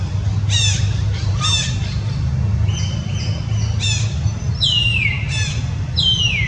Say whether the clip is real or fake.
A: real